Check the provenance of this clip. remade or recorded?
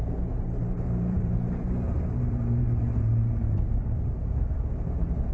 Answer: remade